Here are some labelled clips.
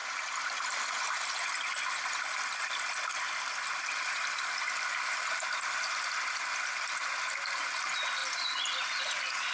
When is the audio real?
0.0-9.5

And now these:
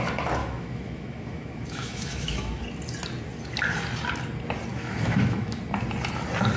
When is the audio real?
0.0-0.4; 2.6-4.7; 5.6-6.6

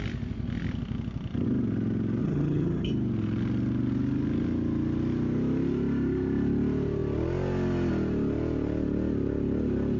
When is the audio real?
0.0-2.2; 2.9-10.0

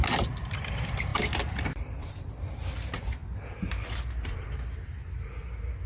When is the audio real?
0.0-1.1; 2.3-5.9

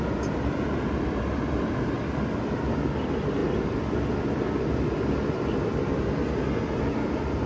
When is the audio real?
0.0-7.5

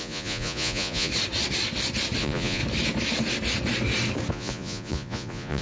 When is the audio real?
1.1-2.2; 2.6-4.3